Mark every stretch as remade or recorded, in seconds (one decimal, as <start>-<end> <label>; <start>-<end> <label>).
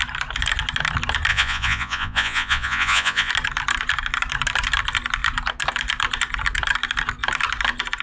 0.0-1.3 recorded; 1.3-3.3 remade; 3.3-8.0 recorded